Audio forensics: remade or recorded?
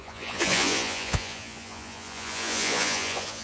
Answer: remade